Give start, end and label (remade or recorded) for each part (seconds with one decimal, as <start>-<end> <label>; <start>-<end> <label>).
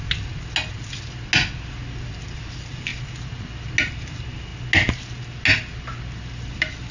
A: 0.0-2.1 recorded; 2.1-2.9 remade; 2.9-3.9 recorded; 3.9-4.5 remade; 4.5-6.9 recorded